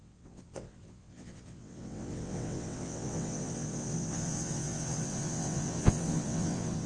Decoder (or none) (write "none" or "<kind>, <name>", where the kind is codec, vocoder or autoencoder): vocoder, WaveNeXt